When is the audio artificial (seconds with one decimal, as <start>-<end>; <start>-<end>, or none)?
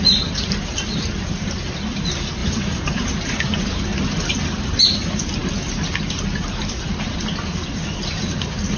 none